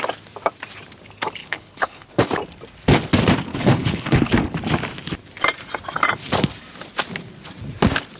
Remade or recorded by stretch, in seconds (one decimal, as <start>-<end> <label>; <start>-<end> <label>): 0.0-1.4 recorded; 1.4-2.1 remade; 2.1-3.5 recorded; 3.5-4.2 remade; 4.2-8.2 recorded